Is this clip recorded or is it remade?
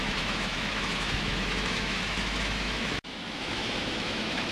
remade